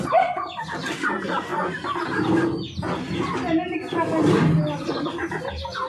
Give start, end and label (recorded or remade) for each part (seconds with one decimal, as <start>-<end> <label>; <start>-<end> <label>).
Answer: 0.0-1.5 remade; 1.5-4.3 recorded; 4.3-5.2 remade; 5.2-5.9 recorded